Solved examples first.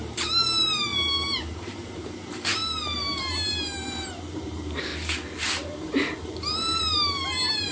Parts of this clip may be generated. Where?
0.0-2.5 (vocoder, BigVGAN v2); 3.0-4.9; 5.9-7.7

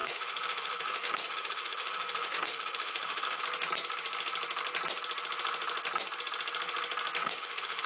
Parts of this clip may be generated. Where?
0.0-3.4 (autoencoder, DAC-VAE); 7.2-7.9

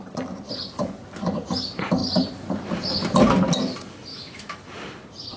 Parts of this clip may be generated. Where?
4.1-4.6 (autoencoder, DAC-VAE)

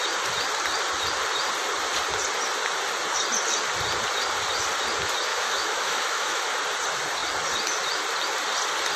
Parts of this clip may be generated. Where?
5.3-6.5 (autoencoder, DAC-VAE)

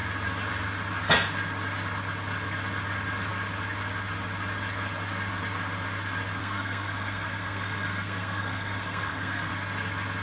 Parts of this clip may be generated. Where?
6.4-9.5 (codec, SNAC)

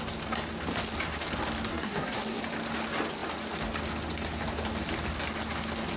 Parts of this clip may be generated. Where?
1.7-2.4 (codec, SNAC)

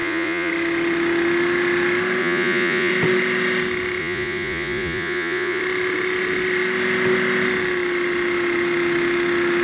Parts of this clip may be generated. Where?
0.0-0.5 (vocoder, Vocos); 2.2-2.9; 4.0-5.6

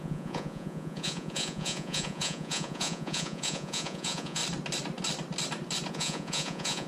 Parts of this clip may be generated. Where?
0.0-4.4 (vocoder, Vocos); 5.9-6.9